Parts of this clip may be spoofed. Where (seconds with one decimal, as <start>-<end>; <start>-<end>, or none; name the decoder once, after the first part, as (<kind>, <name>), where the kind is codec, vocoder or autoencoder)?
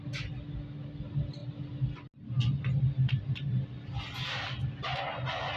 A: none